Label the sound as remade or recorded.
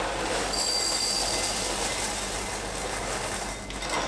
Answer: recorded